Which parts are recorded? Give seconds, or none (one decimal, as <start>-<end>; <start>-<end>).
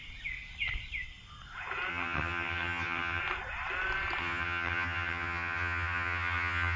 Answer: 0.0-1.9; 3.2-4.2